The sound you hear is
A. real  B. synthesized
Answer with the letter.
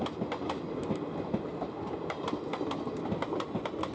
A